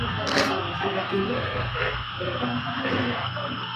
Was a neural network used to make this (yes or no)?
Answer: yes